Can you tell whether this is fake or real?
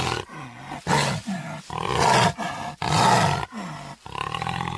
real